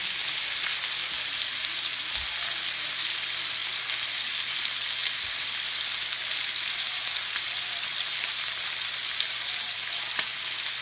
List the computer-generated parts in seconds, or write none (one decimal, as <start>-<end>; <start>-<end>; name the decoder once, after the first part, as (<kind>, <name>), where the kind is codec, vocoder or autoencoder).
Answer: 5.0-5.8 (vocoder, BigVGAN v2); 6.2-10.4